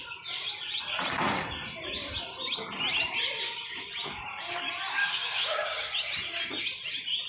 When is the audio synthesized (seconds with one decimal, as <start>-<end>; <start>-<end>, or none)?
5.0-5.9